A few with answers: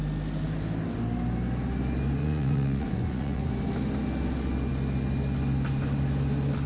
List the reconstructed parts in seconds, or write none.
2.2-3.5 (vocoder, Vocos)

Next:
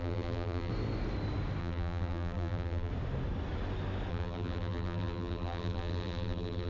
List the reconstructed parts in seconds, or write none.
0.0-0.7 (vocoder, BigVGAN v2); 1.6-2.9; 4.1-6.7

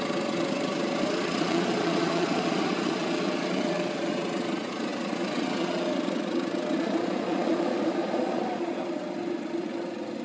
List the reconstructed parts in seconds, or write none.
0.0-10.2 (vocoder, Vocos)

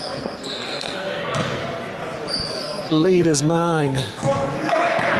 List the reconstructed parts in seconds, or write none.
0.0-1.6 (codec, SNAC); 2.5-5.2

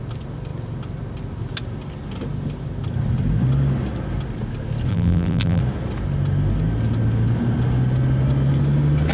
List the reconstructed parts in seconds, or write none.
4.9-5.6 (vocoder, BigVGAN v2)

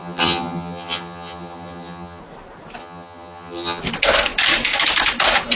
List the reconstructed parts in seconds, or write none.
0.0-2.2 (vocoder, HiFi-GAN); 2.8-3.8

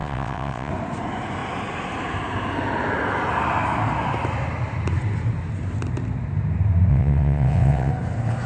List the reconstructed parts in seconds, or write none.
0.0-0.7 (vocoder, WaveNeXt); 6.9-7.9

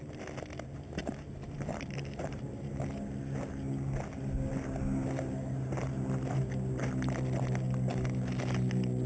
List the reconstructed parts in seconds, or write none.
1.0-2.7 (vocoder, BigVGAN v2)